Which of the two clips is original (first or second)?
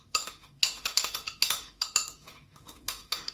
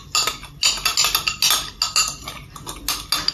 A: second